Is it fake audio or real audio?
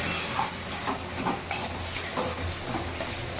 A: real